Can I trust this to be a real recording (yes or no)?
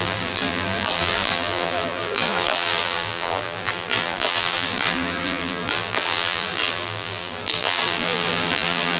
no